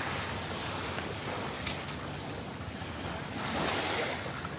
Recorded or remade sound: recorded